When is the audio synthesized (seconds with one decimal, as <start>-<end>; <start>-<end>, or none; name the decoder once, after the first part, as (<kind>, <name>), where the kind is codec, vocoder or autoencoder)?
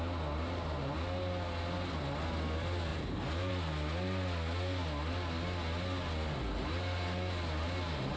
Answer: 2.9-3.5 (vocoder, BigVGAN v2)